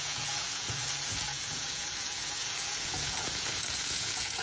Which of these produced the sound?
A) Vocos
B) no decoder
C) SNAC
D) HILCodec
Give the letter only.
A